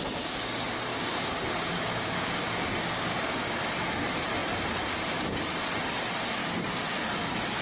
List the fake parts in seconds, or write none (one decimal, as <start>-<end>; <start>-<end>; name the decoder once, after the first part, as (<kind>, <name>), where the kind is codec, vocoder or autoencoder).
0.9-3.4 (codec, DAC)